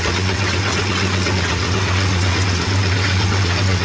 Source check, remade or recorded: remade